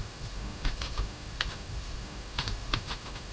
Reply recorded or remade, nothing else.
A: remade